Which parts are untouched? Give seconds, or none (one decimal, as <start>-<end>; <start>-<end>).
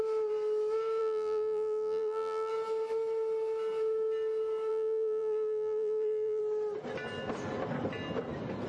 0.0-1.0; 2.5-4.7; 6.4-8.7